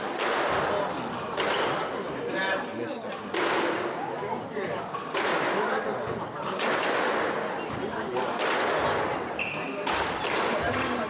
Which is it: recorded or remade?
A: recorded